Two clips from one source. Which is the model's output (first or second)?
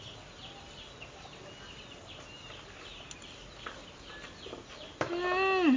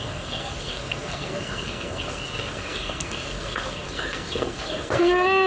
second